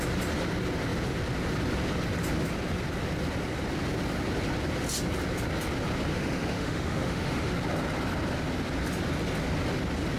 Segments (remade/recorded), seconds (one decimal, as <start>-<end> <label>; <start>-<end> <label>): 0.0-6.1 recorded; 6.1-7.5 remade; 7.5-10.2 recorded